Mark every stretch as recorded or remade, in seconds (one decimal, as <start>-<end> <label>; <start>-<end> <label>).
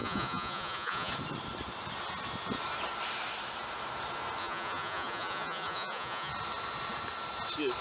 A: 0.0-1.1 remade; 1.1-4.4 recorded; 4.4-6.3 remade; 6.3-7.8 recorded